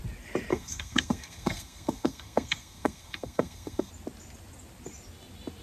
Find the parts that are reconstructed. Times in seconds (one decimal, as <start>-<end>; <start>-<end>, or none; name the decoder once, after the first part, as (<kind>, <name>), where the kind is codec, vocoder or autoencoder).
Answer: 0.5-3.9 (codec, SNAC)